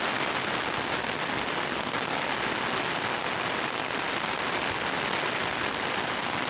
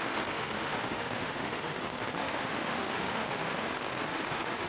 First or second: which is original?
first